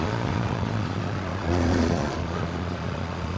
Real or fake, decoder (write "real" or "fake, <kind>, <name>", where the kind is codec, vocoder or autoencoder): fake, vocoder, Vocos